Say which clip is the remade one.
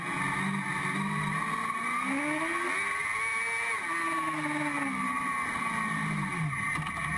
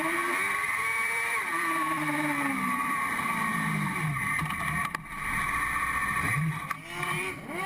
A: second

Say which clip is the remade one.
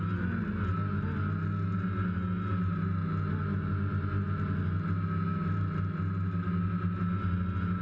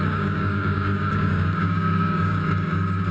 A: second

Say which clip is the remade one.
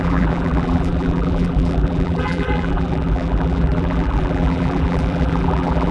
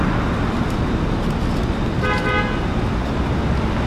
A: first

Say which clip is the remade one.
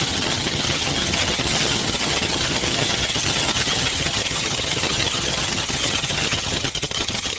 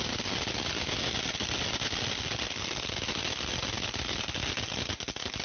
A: first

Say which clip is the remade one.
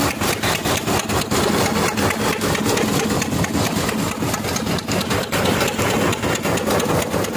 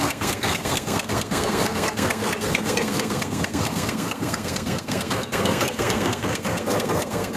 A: second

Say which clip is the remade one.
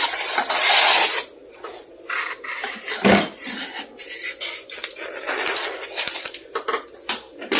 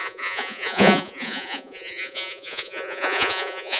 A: second